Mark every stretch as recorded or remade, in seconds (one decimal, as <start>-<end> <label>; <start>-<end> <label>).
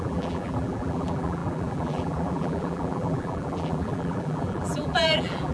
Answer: 0.0-5.5 remade